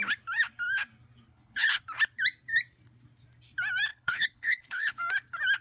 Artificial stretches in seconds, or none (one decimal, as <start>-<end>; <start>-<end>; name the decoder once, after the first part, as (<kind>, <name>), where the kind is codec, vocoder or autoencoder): 1.3-1.8 (codec, HILCodec); 3.9-5.0